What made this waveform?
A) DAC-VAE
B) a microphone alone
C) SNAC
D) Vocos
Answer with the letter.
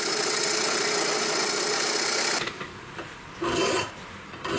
B